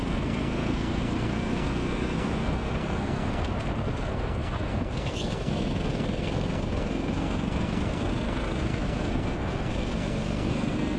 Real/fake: fake